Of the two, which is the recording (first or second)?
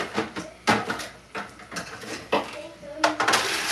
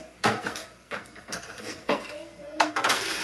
first